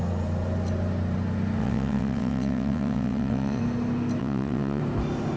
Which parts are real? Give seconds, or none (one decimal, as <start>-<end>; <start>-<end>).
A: 0.0-1.6; 3.6-4.2; 4.8-5.4